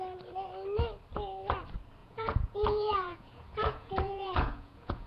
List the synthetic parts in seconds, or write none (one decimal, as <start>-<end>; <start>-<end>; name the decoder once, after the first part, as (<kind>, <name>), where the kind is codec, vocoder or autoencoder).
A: 2.0-5.1 (vocoder, Vocos)